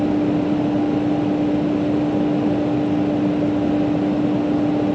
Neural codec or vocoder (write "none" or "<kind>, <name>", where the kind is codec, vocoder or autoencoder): none